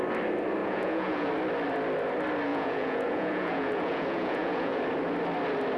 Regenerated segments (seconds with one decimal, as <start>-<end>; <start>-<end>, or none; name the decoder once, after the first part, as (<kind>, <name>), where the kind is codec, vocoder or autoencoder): 0.6-1.3 (vocoder, Vocos); 2.5-4.8